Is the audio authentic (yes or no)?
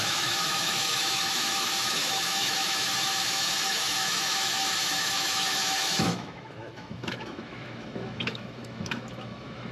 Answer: no